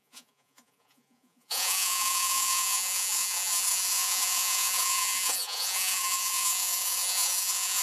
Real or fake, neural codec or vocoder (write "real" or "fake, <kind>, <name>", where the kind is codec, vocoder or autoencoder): fake, vocoder, Vocos